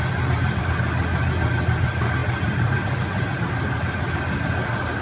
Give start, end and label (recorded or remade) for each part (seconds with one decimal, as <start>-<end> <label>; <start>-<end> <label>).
0.0-5.0 recorded